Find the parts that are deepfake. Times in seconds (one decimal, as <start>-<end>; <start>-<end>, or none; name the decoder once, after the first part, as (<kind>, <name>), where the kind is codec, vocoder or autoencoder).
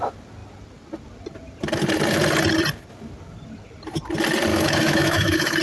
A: 4.5-5.6 (autoencoder, DAC-VAE)